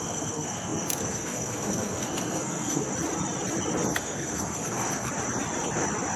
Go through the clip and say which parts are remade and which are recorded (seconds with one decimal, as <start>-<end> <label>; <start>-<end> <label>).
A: 0.0-2.9 remade; 2.9-3.9 recorded; 3.9-5.1 remade; 5.1-6.2 recorded